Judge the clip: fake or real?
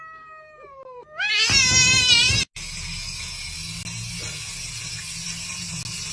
real